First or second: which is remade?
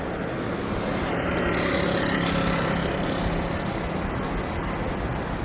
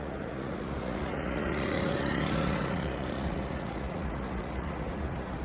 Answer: second